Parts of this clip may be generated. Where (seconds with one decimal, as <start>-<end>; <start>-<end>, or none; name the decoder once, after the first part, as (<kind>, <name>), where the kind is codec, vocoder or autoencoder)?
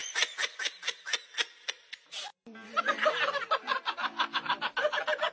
0.0-0.6 (vocoder, Vocos)